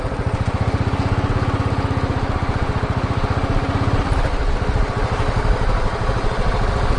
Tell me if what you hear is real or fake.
real